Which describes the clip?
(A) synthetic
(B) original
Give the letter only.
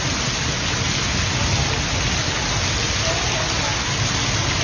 B